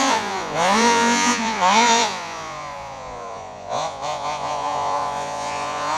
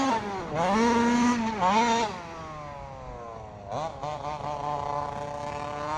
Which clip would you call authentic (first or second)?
second